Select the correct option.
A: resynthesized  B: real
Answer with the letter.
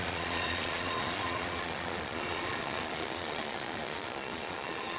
A